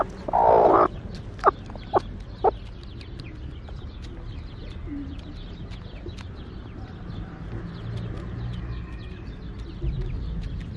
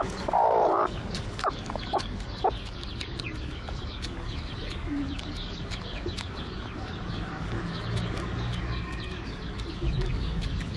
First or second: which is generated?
second